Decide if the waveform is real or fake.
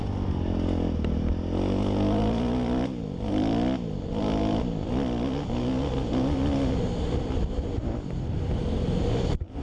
real